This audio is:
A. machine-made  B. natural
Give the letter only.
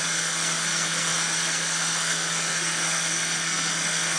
A